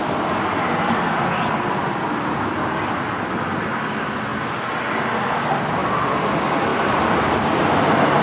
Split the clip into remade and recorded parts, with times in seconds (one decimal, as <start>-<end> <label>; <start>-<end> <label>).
0.0-4.3 recorded; 4.3-5.1 remade; 5.1-6.7 recorded; 6.7-7.6 remade; 7.6-8.2 recorded